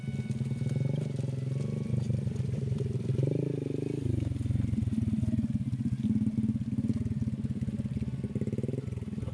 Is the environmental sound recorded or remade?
recorded